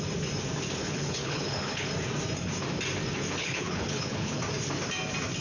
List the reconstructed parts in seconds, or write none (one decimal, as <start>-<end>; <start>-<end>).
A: 0.8-1.9; 3.4-4.4